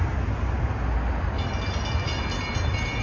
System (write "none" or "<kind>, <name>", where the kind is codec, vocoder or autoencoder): none